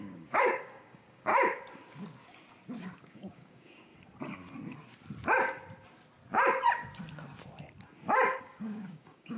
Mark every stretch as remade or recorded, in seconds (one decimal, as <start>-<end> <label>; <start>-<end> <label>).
0.0-1.3 remade; 1.3-3.0 recorded; 3.0-3.9 remade; 3.9-8.4 recorded; 8.4-9.4 remade